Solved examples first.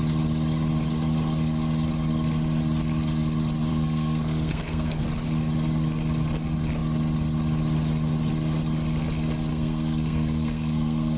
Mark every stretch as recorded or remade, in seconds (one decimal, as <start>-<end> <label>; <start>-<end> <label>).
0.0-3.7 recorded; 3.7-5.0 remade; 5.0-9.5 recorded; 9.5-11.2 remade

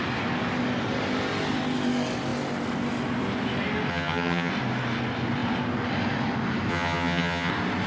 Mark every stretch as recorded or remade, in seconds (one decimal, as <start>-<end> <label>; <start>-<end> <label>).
0.0-3.9 recorded; 3.9-4.5 remade; 4.5-6.7 recorded; 6.7-7.5 remade; 7.5-7.9 recorded

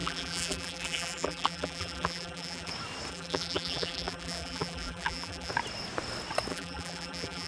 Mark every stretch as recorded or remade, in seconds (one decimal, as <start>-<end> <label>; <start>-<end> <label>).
0.0-2.7 remade; 2.7-3.1 recorded; 3.1-5.5 remade; 5.5-6.5 recorded; 6.5-7.5 remade